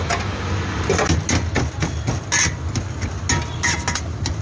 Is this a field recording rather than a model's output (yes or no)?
yes